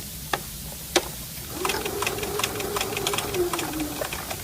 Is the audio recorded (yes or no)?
no